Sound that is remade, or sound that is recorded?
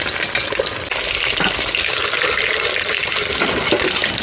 recorded